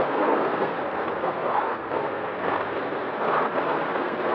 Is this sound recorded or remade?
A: remade